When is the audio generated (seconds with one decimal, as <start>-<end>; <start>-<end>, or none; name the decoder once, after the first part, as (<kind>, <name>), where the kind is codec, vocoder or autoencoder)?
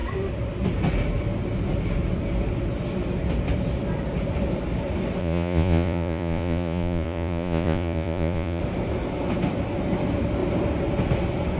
5.2-8.6 (vocoder, Vocos)